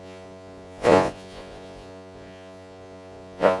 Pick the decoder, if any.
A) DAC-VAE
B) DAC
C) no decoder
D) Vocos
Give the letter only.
D